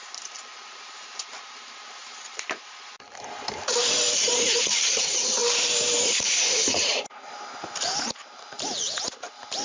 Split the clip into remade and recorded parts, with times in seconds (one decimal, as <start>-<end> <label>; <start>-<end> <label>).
0.0-9.6 remade